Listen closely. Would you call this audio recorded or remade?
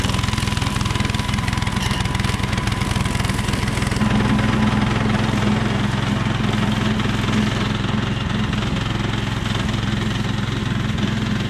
recorded